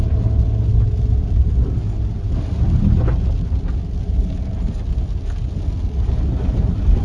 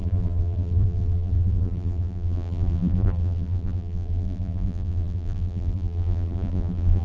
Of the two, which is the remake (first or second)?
second